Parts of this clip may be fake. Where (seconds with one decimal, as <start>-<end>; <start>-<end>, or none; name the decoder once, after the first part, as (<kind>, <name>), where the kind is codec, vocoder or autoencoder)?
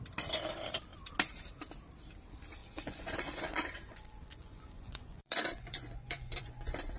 2.6-7.0 (vocoder, Vocos)